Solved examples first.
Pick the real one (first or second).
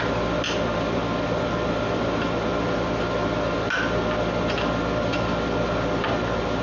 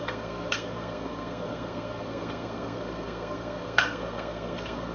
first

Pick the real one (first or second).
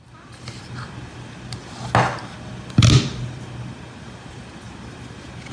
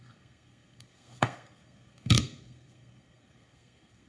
first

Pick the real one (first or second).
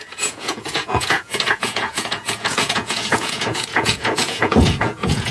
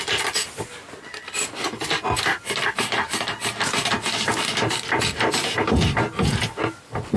second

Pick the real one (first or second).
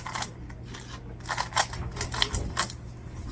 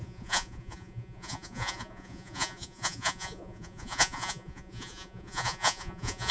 first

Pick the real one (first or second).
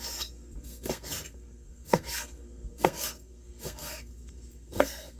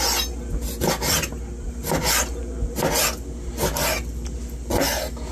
second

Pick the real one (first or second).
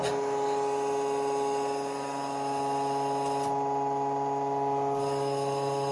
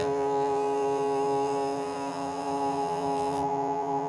first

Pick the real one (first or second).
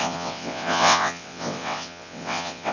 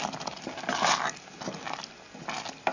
second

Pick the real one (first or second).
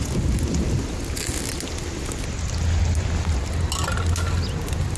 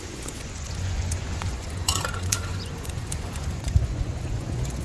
first